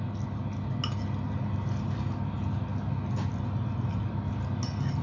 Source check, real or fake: real